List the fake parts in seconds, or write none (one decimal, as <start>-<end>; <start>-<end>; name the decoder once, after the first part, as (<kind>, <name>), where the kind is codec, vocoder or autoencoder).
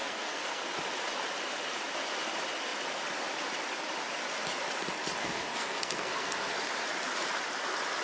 0.0-0.6 (codec, SNAC); 5.2-6.5